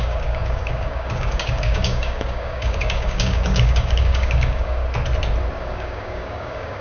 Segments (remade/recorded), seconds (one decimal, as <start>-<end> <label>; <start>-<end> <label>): 0.0-4.8 remade; 4.8-5.6 recorded; 5.6-6.8 remade